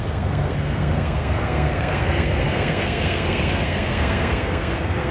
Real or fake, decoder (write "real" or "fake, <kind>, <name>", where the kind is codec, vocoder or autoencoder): fake, codec, SNAC